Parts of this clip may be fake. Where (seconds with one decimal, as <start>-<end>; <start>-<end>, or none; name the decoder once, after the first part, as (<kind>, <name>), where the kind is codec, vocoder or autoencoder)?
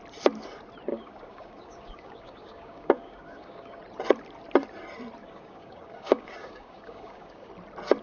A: 0.9-3.8 (codec, DAC); 5.2-7.5